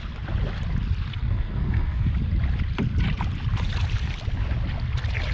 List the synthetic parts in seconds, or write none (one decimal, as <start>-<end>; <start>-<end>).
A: 1.1-2.1